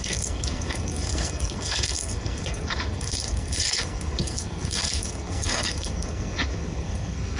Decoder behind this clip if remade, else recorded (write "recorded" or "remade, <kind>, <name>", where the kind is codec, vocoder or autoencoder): remade, codec, SNAC